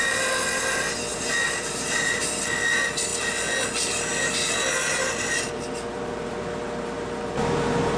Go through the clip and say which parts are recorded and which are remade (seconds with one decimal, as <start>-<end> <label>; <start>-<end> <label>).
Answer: 0.0-1.1 recorded; 1.1-2.2 remade; 2.2-8.0 recorded